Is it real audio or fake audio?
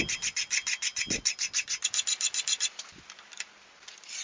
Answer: real